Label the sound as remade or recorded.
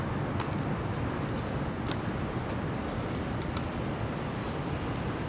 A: recorded